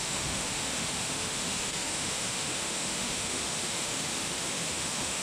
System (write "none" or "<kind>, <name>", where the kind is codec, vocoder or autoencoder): autoencoder, DAC-VAE